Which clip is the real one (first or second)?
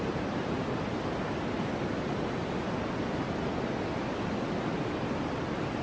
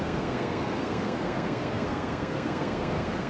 first